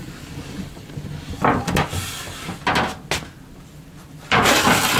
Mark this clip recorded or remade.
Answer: recorded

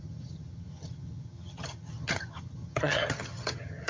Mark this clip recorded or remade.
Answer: remade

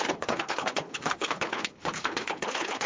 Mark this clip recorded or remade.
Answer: remade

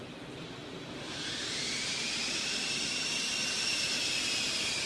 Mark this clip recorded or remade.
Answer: recorded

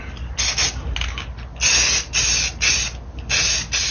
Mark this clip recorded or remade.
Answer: recorded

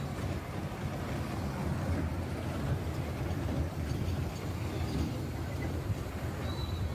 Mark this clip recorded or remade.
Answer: recorded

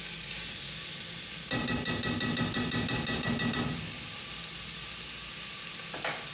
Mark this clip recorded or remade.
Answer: recorded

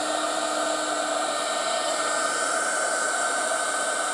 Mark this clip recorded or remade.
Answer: remade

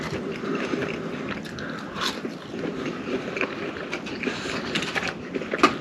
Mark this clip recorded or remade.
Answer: recorded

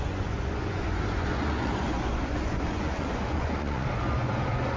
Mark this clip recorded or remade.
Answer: remade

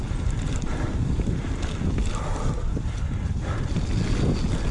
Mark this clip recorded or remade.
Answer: recorded